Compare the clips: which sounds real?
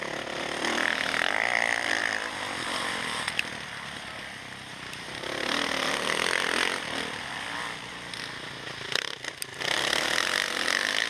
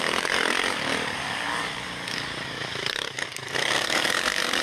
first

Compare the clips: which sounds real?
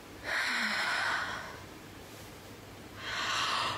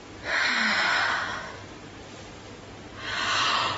second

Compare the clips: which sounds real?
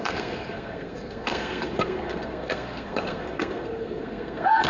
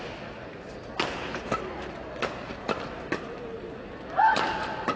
second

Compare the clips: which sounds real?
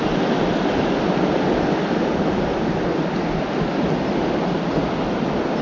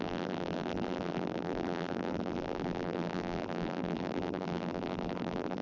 first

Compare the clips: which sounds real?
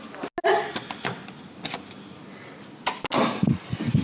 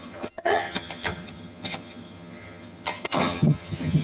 first